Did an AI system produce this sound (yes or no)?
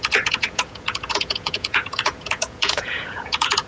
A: yes